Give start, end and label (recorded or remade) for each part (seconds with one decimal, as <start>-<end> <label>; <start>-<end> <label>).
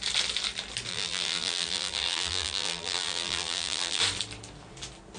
0.0-0.9 recorded; 0.9-4.0 remade; 4.0-5.2 recorded